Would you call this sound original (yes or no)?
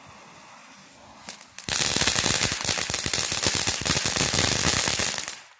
yes